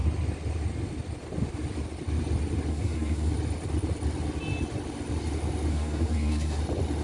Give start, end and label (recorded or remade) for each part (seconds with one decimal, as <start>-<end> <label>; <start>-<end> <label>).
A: 0.0-2.7 recorded; 2.7-3.3 remade; 3.3-5.7 recorded; 5.7-6.6 remade; 6.6-7.0 recorded